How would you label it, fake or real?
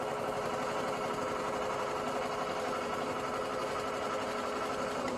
real